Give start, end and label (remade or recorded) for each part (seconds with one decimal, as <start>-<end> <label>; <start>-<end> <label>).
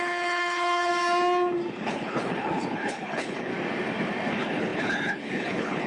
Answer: 0.0-0.9 remade; 0.9-1.7 recorded; 1.7-3.5 remade; 3.5-4.3 recorded; 4.3-5.9 remade